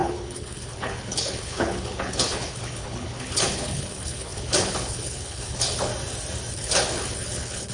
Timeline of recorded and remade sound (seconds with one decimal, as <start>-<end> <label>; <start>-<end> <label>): 0.0-5.9 remade; 5.9-6.5 recorded; 6.5-7.7 remade